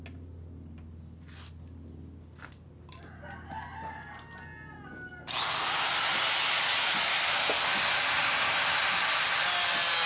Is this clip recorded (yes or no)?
yes